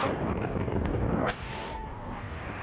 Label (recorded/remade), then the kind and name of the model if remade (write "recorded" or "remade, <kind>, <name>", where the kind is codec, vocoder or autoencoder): remade, codec, DAC